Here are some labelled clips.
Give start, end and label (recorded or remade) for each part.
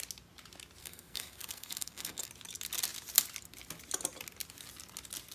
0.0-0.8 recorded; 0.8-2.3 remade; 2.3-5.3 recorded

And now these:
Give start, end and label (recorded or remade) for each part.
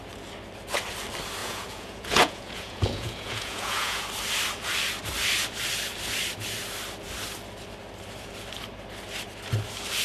0.0-1.4 recorded; 1.4-4.0 remade; 4.0-10.0 recorded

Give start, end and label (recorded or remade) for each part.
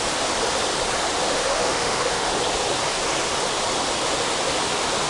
0.0-1.2 recorded; 1.2-2.3 remade; 2.3-5.1 recorded